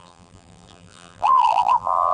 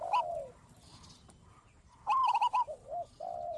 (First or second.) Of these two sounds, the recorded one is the second